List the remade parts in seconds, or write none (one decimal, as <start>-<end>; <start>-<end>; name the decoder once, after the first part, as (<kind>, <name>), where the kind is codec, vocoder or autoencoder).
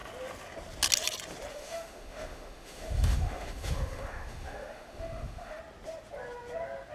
1.5-5.6 (autoencoder, DAC-VAE)